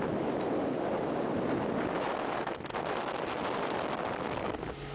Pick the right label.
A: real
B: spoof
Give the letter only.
A